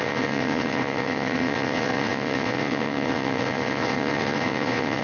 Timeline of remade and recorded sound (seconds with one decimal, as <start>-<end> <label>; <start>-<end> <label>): 0.0-5.0 remade